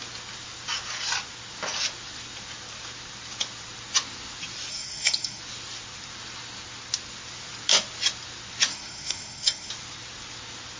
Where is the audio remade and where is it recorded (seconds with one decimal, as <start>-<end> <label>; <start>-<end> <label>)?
0.0-4.7 recorded; 4.7-5.4 remade; 5.4-8.7 recorded; 8.7-9.7 remade; 9.7-10.8 recorded